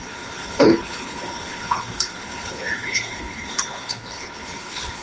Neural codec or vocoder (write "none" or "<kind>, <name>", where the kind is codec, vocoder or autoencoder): codec, HILCodec